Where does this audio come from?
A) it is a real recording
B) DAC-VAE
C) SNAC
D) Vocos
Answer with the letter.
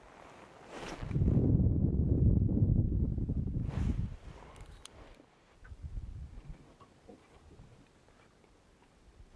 A